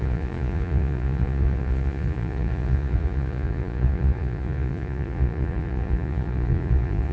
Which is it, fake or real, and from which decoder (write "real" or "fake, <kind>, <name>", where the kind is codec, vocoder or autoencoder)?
fake, vocoder, Vocos